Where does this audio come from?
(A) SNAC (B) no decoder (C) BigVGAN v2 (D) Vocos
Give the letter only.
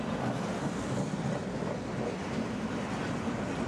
B